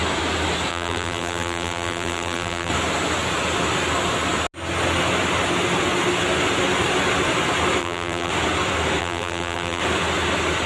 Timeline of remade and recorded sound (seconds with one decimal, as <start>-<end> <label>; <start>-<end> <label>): 0.0-0.7 recorded; 0.7-2.7 remade; 2.7-7.8 recorded; 7.8-8.3 remade; 8.3-9.0 recorded; 9.0-9.8 remade; 9.8-10.7 recorded

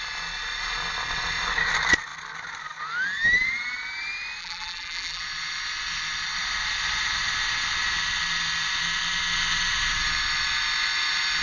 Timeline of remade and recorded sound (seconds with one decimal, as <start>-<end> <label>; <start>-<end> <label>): 0.0-4.4 recorded; 4.4-5.2 remade; 5.2-11.4 recorded

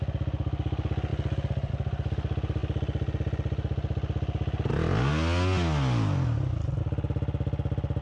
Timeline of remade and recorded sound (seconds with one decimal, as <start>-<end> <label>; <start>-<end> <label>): 0.0-8.0 recorded

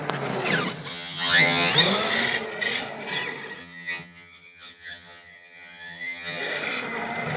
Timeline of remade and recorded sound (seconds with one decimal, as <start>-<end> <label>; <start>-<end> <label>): 0.0-0.9 recorded; 0.9-1.7 remade; 1.7-3.6 recorded; 3.6-6.4 remade; 6.4-7.4 recorded

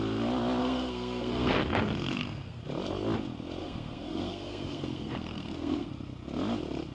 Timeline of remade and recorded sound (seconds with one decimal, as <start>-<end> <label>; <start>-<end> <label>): 0.0-0.6 recorded; 0.6-2.6 remade; 2.6-3.6 recorded; 3.6-5.9 remade; 5.9-6.9 recorded

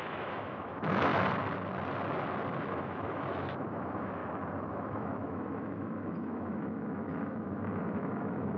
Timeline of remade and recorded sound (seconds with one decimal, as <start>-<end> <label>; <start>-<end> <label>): 0.0-1.1 remade; 1.1-2.6 recorded; 2.6-4.2 remade; 4.2-4.7 recorded; 4.7-8.6 remade